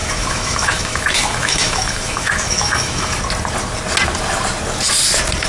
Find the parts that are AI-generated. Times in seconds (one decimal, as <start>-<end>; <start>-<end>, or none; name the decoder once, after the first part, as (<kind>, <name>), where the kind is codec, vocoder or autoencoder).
0.0-3.2 (autoencoder, DAC-VAE)